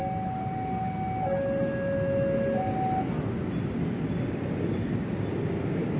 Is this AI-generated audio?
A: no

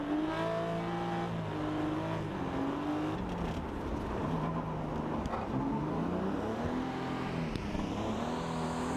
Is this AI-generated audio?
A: no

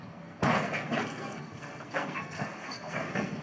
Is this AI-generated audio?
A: yes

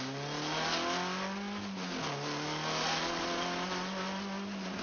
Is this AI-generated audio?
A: no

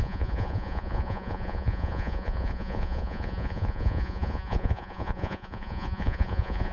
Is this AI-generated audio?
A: yes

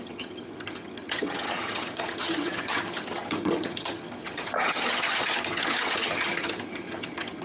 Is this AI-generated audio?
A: yes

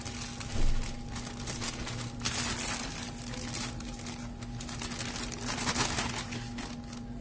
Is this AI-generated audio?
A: no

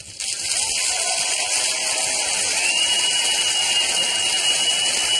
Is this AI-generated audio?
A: no